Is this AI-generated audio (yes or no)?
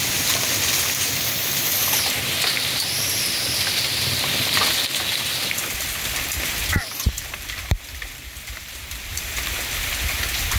yes